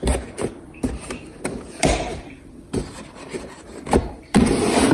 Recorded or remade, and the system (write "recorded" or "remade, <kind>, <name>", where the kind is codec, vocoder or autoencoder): remade, vocoder, BigVGAN v2